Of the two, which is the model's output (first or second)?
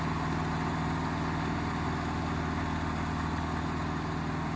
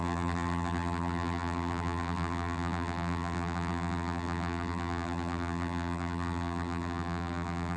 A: second